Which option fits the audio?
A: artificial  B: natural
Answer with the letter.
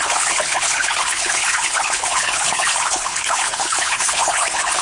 A